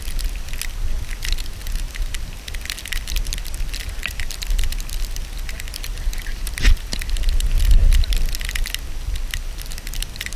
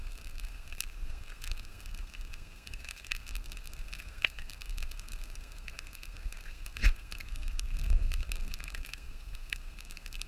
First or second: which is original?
first